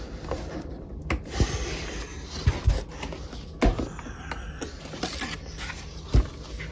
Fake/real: real